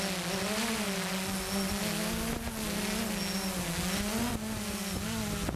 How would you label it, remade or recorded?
recorded